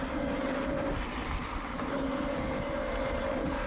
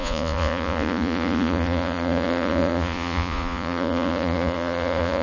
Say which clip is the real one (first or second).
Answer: first